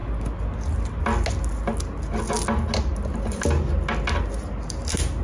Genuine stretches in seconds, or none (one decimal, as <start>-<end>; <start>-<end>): 0.0-5.2